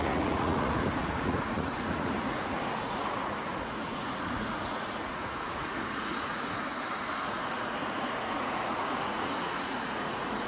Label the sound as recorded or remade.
remade